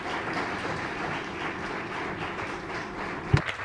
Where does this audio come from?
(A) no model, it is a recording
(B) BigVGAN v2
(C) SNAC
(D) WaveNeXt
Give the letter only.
A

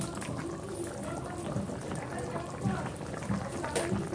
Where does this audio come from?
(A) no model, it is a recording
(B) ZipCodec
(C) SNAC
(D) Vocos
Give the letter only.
A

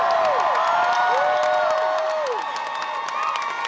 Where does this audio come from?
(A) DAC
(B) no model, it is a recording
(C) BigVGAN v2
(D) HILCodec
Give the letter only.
B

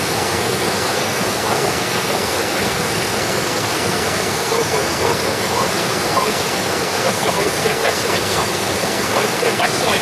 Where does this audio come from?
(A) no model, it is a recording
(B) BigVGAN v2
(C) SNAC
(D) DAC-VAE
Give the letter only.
C